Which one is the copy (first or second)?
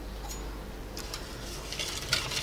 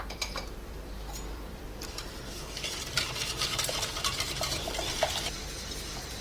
second